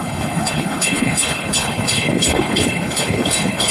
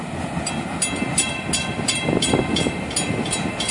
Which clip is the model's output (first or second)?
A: first